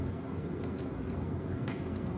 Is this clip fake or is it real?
fake